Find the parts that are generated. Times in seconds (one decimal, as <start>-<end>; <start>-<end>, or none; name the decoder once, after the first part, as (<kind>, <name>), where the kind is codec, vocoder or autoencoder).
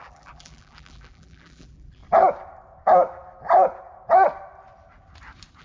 0.0-2.0 (vocoder, BigVGAN v2)